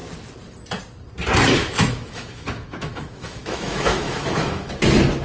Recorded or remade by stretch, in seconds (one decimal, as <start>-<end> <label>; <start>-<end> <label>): 0.0-1.6 recorded; 1.6-4.7 remade; 4.7-5.2 recorded